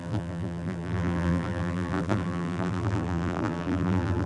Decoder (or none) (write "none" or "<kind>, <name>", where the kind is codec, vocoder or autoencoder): vocoder, BigVGAN v2